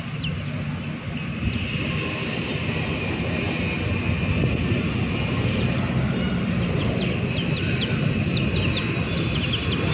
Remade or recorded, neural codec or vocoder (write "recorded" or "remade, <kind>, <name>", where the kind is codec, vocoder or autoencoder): recorded